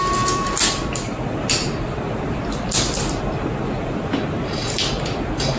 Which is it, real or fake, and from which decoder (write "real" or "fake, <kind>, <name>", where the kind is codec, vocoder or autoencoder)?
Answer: fake, vocoder, BigVGAN v2